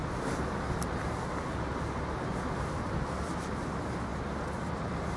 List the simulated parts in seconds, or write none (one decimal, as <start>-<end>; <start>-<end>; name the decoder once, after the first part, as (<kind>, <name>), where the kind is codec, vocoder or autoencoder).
none